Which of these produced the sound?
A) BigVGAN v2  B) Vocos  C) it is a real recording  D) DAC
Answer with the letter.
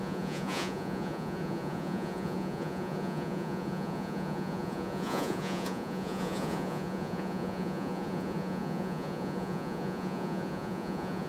B